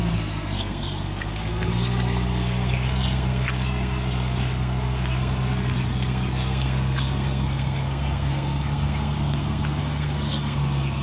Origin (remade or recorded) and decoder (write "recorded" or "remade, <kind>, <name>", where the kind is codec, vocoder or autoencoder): remade, codec, SNAC